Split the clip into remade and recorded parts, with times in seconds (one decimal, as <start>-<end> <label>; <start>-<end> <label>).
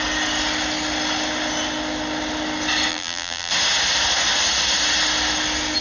0.0-2.9 recorded; 2.9-3.5 remade; 3.5-5.8 recorded